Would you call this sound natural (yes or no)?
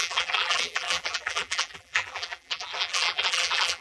no